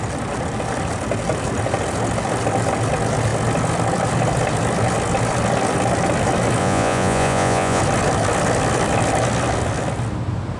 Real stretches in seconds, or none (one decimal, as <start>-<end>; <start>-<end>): 0.0-6.6; 7.8-10.6